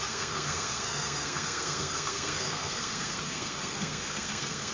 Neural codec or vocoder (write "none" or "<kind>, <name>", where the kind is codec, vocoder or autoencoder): codec, SNAC